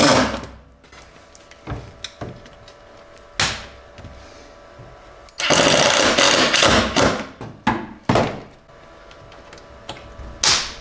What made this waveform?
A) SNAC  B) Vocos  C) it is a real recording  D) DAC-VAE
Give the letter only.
C